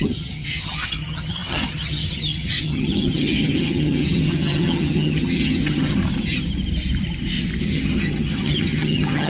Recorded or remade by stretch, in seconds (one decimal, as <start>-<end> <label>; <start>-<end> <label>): 0.0-6.0 remade; 6.0-7.6 recorded; 7.6-9.3 remade

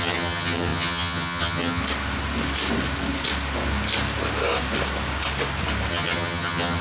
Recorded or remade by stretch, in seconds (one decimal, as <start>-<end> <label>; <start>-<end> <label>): 0.0-1.8 remade; 1.8-5.9 recorded; 5.9-6.8 remade

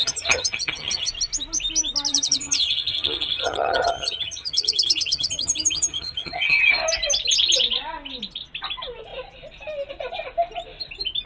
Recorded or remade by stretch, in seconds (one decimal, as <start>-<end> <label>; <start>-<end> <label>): 0.0-1.1 remade; 1.1-2.1 recorded; 2.1-6.6 remade; 6.6-11.3 recorded